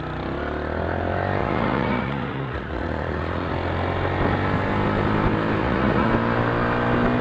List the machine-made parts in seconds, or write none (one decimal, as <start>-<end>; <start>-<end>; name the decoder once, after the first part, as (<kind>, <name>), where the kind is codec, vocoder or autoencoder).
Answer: 1.4-3.5 (vocoder, Vocos); 5.6-6.1